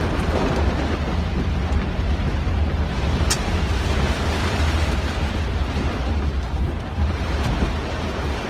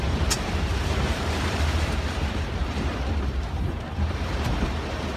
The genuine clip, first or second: first